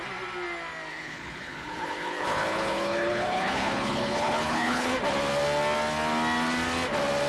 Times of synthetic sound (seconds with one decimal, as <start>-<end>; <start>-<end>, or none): 0.9-4.9